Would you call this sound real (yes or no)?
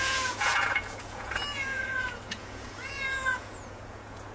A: no